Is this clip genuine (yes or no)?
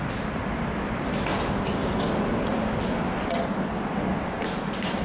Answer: yes